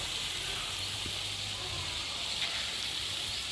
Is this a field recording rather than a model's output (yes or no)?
yes